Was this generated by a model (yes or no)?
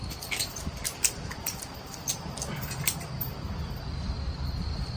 yes